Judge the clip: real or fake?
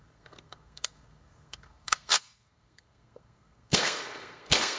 fake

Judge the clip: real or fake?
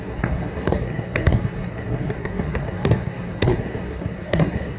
fake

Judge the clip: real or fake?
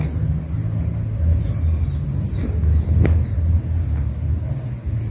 real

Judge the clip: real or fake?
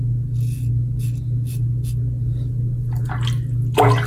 real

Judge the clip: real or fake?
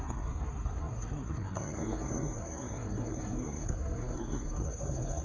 fake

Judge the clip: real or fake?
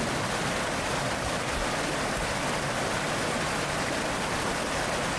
real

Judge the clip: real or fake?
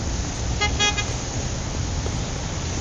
real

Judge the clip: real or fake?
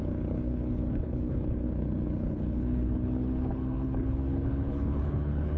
fake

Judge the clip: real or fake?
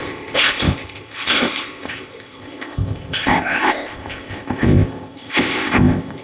fake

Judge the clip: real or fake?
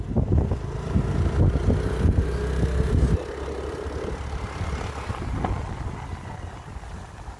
real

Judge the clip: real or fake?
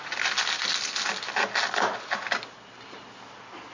real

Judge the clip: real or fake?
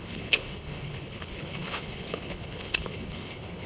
fake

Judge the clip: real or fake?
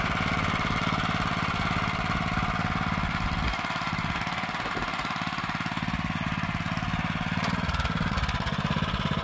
real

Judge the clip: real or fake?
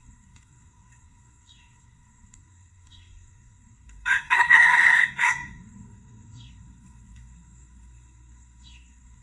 fake